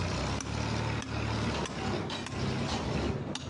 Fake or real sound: real